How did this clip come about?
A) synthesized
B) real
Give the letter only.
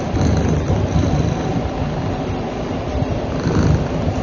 A